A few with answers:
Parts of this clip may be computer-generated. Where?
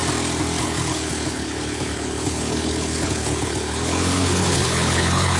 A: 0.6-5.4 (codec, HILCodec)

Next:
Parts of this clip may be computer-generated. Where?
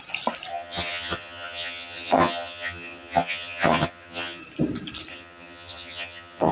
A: 0.5-4.4 (vocoder, HiFi-GAN); 5.1-6.5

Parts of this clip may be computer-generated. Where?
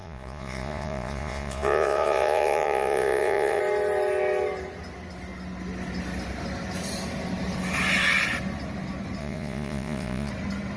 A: 0.0-3.6 (vocoder, Vocos); 9.2-10.3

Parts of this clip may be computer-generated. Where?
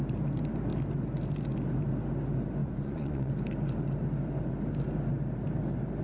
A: 2.6-3.3 (vocoder, Vocos)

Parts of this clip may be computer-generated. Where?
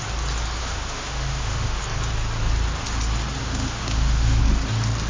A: 0.6-1.8 (autoencoder, DAC-VAE); 3.4-4.4